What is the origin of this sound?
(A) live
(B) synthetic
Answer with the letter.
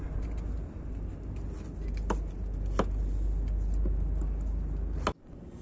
A